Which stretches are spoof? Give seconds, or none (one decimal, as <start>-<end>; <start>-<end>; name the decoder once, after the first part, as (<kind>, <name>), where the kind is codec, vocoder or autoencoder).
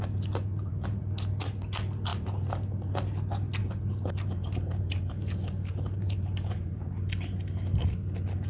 0.5-1.0 (vocoder, BigVGAN v2); 2.1-2.9; 3.6-6.9